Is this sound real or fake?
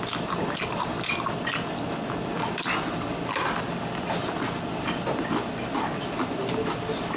real